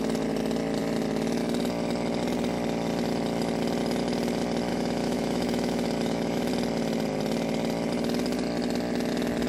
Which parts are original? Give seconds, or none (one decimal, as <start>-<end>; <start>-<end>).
0.0-4.7; 6.5-9.5